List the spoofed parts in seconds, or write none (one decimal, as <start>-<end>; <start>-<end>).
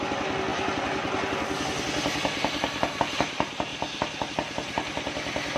none